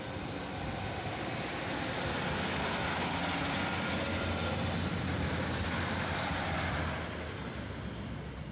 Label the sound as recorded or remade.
recorded